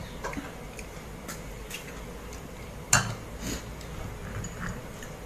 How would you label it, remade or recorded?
recorded